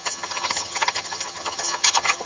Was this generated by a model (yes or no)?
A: yes